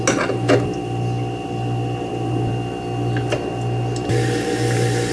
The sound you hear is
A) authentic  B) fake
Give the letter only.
A